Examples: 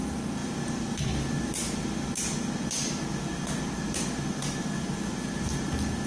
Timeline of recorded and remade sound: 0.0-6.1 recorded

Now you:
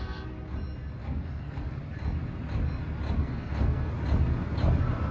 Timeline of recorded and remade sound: 0.0-1.0 recorded; 1.0-1.8 remade; 1.8-3.2 recorded; 3.2-3.9 remade; 3.9-5.1 recorded

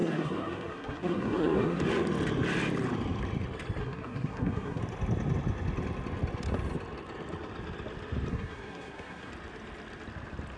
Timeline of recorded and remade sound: 0.0-1.8 remade; 1.8-3.8 recorded; 3.8-4.8 remade; 4.8-8.3 recorded; 8.3-9.3 remade; 9.3-10.6 recorded

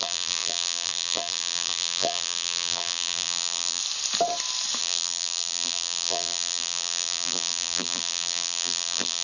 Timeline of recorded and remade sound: 0.0-3.8 remade; 3.8-4.8 recorded; 4.8-9.2 remade

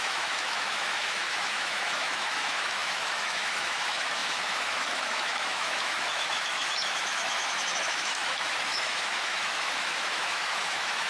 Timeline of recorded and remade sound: 0.0-11.1 remade

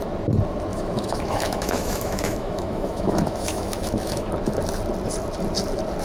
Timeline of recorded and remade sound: 0.0-0.7 recorded; 0.7-4.3 remade; 4.3-6.0 recorded

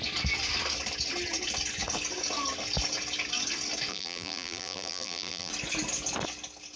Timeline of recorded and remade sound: 0.0-3.9 recorded; 3.9-5.5 remade; 5.5-6.8 recorded